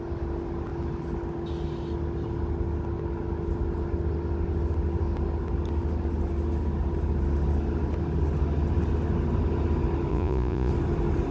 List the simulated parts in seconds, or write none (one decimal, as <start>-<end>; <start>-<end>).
10.1-10.7